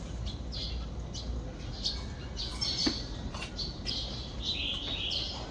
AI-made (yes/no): no